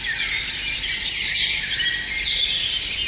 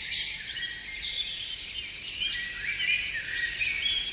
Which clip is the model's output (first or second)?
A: second